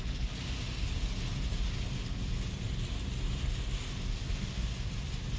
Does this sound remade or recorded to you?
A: recorded